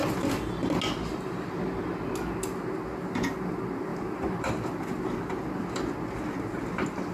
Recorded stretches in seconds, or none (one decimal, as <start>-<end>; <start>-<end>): 0.0-1.1; 1.9-3.9; 4.5-7.1